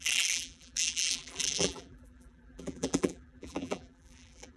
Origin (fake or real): fake